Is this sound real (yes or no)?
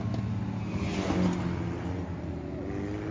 yes